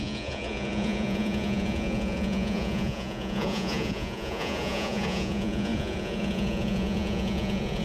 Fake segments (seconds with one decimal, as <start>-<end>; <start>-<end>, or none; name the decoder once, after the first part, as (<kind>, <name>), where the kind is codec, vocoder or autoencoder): 0.0-7.8 (vocoder, Vocos)